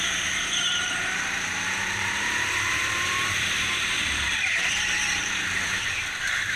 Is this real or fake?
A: fake